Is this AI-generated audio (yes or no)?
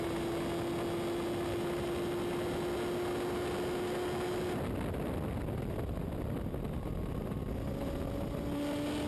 no